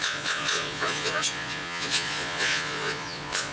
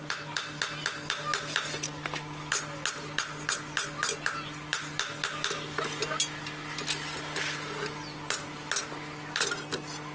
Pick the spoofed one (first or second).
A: first